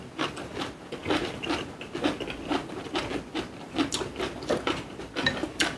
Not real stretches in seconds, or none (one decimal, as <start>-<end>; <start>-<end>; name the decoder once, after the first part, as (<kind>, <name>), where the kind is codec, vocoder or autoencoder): none